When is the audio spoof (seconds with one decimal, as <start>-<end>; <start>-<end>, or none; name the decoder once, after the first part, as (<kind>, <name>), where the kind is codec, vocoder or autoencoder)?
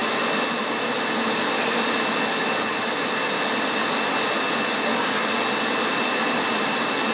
none